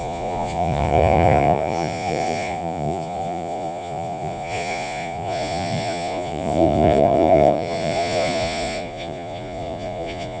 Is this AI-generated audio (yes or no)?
yes